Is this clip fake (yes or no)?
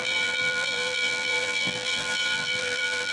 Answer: yes